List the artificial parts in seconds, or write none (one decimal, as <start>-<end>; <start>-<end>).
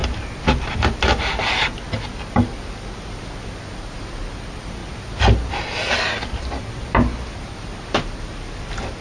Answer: none